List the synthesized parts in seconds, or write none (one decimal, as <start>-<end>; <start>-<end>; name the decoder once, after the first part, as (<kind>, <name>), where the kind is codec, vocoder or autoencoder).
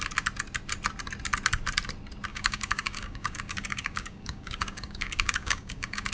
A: 2.3-6.1 (codec, DAC)